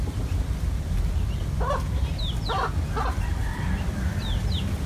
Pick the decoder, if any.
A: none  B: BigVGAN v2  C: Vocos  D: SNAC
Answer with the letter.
A